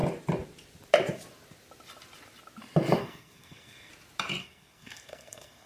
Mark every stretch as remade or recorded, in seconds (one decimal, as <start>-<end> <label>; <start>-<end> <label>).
0.0-3.0 recorded; 3.0-3.9 remade; 3.9-4.4 recorded; 4.4-5.7 remade